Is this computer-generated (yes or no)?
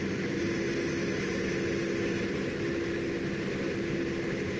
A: no